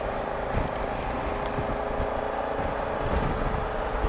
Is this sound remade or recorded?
recorded